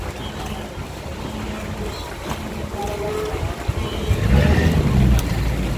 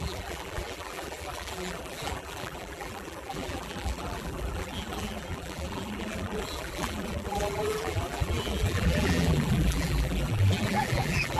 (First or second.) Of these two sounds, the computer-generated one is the second